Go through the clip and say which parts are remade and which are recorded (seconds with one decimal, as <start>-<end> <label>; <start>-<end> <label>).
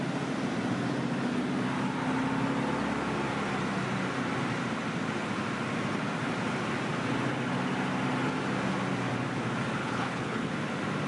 0.0-9.8 recorded; 9.8-10.5 remade; 10.5-11.1 recorded